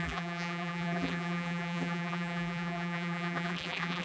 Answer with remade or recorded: remade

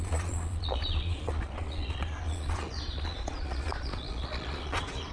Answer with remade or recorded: remade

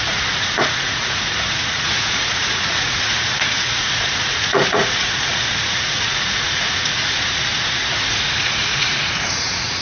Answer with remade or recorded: remade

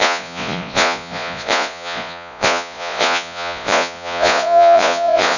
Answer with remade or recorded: remade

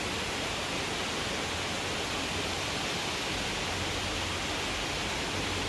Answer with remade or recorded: recorded